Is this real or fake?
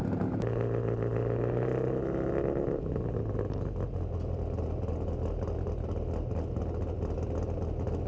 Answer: real